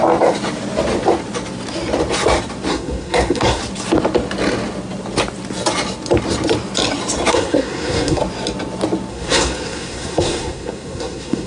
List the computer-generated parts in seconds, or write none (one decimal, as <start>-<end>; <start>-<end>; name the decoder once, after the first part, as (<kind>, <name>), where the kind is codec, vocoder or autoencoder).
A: 2.7-3.6 (codec, SNAC); 7.3-8.2; 9.1-11.5